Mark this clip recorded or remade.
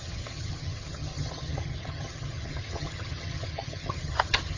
remade